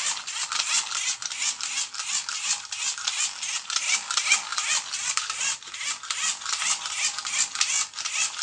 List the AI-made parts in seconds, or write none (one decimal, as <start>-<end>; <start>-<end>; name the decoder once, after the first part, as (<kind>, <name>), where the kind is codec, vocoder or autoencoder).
none